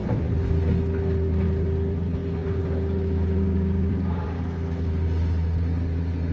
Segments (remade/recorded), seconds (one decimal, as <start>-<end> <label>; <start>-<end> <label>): 0.0-2.4 recorded; 2.4-4.4 remade; 4.4-6.3 recorded